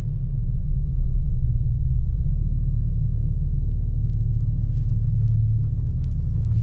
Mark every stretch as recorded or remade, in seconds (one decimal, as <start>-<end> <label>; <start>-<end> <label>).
0.0-0.4 recorded; 0.4-2.3 remade; 2.3-6.6 recorded